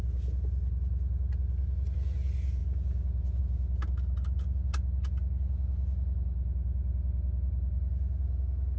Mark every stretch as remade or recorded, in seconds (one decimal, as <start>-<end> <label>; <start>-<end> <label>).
0.0-8.8 recorded